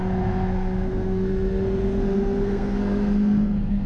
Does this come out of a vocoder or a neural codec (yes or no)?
yes